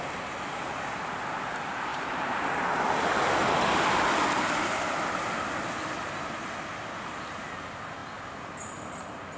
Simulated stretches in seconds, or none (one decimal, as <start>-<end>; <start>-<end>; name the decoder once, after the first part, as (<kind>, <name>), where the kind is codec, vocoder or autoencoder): 1.9-5.4 (vocoder, BigVGAN v2); 8.0-8.5